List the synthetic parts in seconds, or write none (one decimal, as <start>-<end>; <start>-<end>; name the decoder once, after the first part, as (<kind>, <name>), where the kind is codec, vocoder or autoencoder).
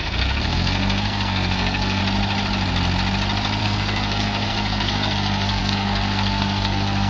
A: 0.0-2.0 (codec, SNAC); 3.6-7.1